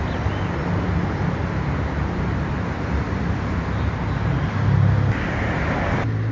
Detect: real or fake real